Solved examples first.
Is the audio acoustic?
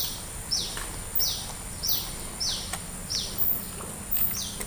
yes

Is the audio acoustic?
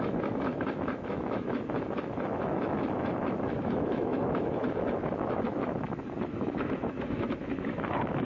no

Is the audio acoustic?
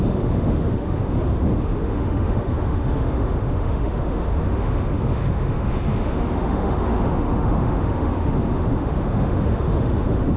no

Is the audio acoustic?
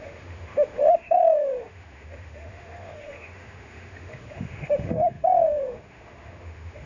no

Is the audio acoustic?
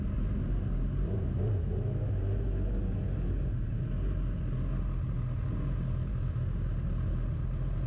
yes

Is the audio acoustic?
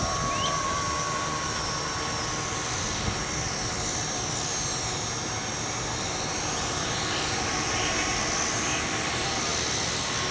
yes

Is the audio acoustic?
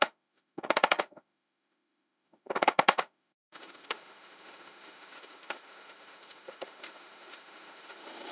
no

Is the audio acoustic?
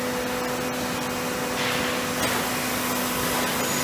yes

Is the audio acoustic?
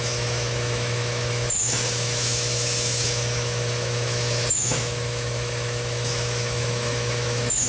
no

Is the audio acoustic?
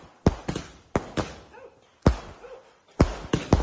yes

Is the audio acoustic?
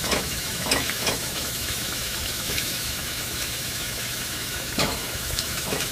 no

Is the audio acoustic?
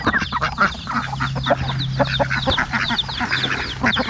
yes